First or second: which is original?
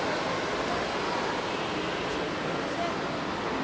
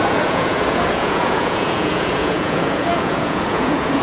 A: first